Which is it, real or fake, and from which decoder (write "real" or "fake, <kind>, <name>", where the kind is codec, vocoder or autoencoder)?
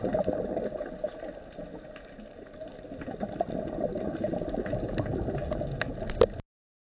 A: real